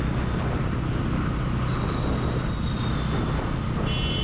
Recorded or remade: recorded